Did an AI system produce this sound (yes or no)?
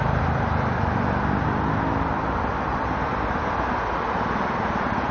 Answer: no